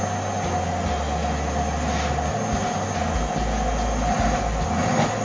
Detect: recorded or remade recorded